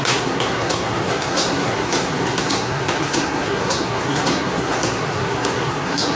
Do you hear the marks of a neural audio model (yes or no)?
yes